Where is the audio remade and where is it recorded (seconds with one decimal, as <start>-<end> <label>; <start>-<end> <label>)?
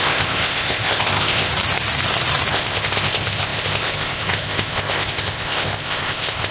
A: 0.0-1.5 remade; 1.5-2.5 recorded; 2.5-6.5 remade